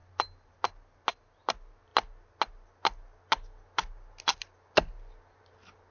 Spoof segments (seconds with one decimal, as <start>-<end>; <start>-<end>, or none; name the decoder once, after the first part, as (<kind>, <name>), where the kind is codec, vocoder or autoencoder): none

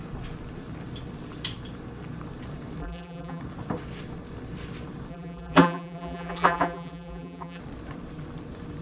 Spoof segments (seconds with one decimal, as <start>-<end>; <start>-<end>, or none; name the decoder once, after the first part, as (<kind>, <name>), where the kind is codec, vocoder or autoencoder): 2.8-3.4 (vocoder, BigVGAN v2); 5.1-7.6

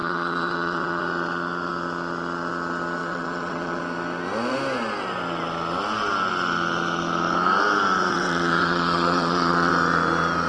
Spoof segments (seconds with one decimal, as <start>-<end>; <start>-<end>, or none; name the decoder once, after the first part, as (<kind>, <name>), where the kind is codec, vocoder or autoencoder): 0.0-1.0 (vocoder, WaveNeXt); 3.0-3.8; 8.1-9.7